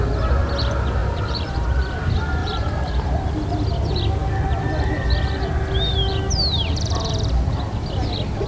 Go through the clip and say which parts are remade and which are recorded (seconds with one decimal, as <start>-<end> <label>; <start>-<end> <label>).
0.0-1.0 recorded; 1.0-2.0 remade; 2.0-2.4 recorded; 2.4-3.3 remade; 3.3-8.5 recorded